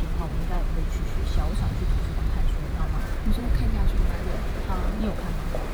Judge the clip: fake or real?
fake